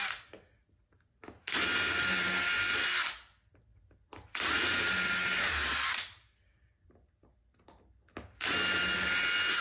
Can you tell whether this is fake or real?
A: real